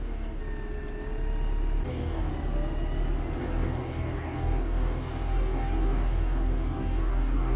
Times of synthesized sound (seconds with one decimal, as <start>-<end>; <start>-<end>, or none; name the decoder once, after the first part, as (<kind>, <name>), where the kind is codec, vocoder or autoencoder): 0.0-0.4 (codec, DAC); 1.9-2.3; 3.4-7.6